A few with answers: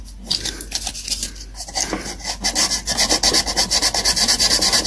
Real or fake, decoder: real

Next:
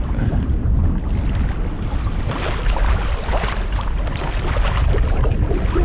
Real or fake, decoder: real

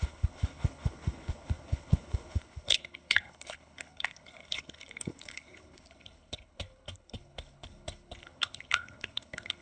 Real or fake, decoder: fake, codec, HILCodec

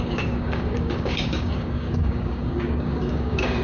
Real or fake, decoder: fake, codec, DAC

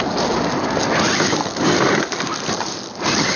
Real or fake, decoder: real